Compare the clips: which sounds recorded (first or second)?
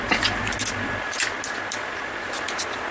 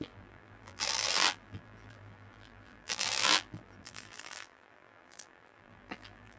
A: first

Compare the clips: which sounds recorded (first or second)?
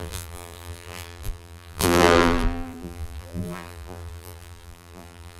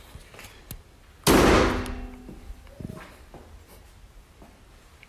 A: second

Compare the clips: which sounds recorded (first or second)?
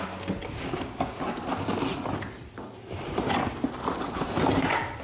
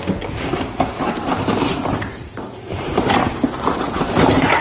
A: first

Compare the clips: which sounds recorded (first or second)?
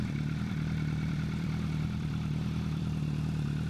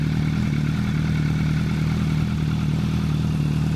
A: second